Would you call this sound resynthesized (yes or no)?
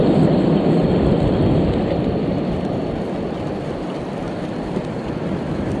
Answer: no